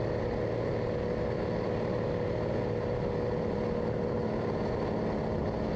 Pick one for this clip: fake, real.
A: real